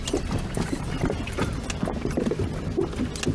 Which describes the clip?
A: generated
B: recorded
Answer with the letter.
B